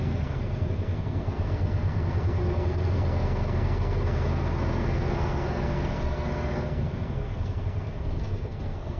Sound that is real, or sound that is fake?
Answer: fake